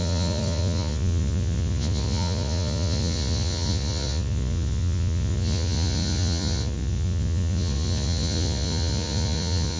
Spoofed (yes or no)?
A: yes